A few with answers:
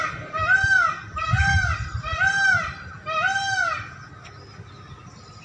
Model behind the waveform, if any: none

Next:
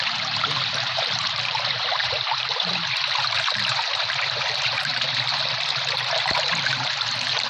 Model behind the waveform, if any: vocoder, BigVGAN v2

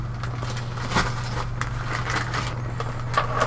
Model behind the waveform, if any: none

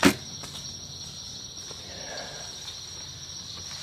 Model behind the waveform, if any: none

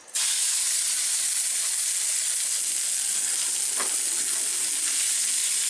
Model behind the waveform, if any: none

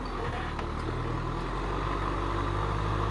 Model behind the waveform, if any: none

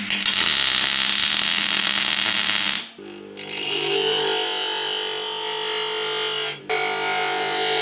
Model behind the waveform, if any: none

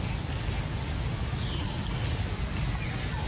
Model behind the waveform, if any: none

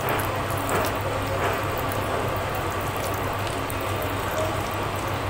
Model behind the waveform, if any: none